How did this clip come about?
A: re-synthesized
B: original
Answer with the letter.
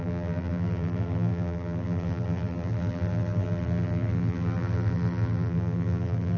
A